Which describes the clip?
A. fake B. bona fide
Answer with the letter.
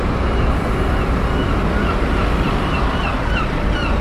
B